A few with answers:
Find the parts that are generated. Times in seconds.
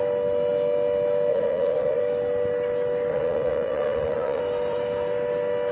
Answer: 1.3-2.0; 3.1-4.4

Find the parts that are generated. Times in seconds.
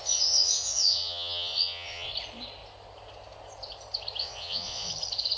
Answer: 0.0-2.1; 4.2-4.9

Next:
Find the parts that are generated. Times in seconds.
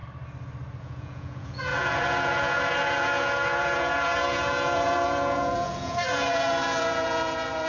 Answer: 0.8-7.7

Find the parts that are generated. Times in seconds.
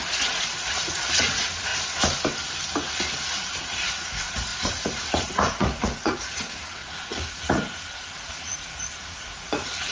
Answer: 0.0-1.7; 3.5-9.9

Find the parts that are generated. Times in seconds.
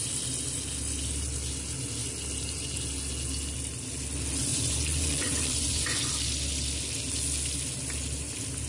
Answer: 4.5-6.1